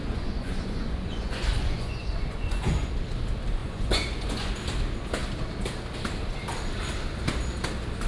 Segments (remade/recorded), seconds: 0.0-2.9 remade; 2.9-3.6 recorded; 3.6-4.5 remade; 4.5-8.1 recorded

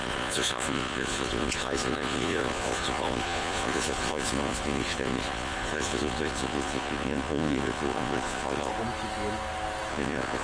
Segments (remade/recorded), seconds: 0.0-8.7 remade; 8.7-9.9 recorded; 9.9-10.4 remade

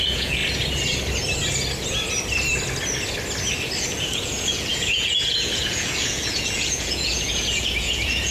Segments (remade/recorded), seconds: 0.0-0.4 remade; 0.4-3.8 recorded; 3.8-8.3 remade

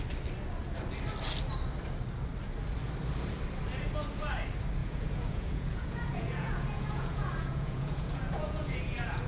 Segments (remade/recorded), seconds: 0.0-4.8 recorded; 4.8-9.3 remade

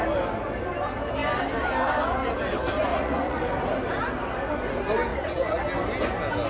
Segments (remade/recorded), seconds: 0.0-2.9 recorded; 2.9-3.4 remade; 3.4-5.1 recorded; 5.1-5.6 remade; 5.6-6.5 recorded